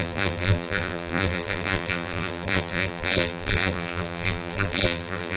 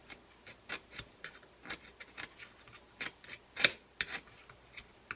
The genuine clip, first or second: second